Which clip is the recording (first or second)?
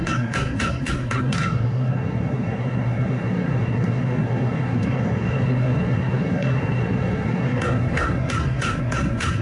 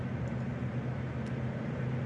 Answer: second